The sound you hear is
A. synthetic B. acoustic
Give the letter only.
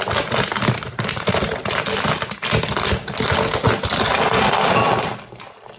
B